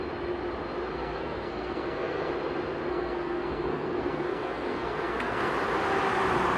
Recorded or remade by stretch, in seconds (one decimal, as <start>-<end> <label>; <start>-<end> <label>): 0.0-0.9 recorded; 0.9-2.3 remade; 2.3-2.9 recorded; 2.9-5.5 remade; 5.5-6.6 recorded

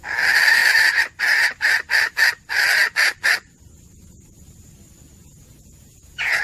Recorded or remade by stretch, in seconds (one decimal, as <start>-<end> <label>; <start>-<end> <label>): 0.0-5.2 recorded; 5.2-6.4 remade

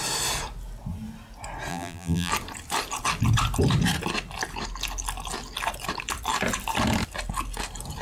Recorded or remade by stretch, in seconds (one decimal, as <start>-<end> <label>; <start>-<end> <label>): 0.0-1.7 recorded; 1.7-2.3 remade; 2.3-8.0 recorded

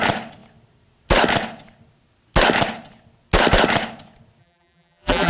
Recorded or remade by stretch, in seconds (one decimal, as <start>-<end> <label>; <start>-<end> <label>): 0.0-4.4 recorded; 4.4-5.3 remade

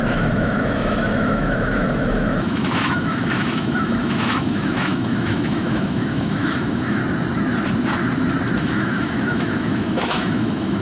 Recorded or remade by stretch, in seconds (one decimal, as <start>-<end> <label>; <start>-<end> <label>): 0.0-7.0 remade; 7.0-8.6 recorded; 8.6-10.8 remade

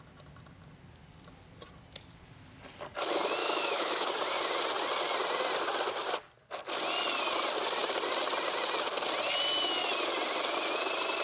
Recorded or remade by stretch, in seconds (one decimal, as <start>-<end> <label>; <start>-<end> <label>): 0.0-3.4 recorded; 3.4-4.1 remade; 4.1-11.2 recorded

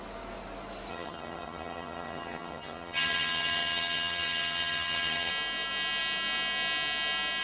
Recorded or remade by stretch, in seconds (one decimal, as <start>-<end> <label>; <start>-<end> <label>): 0.0-0.9 recorded; 0.9-5.3 remade; 5.3-7.4 recorded

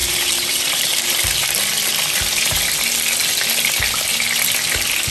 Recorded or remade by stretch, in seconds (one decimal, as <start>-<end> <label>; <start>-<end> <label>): 0.0-1.1 remade; 1.1-5.1 recorded